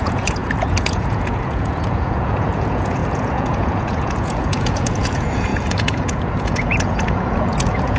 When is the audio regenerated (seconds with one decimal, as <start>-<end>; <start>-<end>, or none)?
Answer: 0.0-8.0